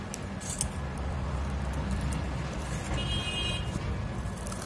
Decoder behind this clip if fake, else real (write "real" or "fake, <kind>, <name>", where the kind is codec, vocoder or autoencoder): real